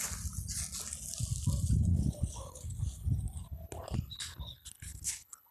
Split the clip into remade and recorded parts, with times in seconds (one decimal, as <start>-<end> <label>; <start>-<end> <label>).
0.0-1.9 recorded; 1.9-5.5 remade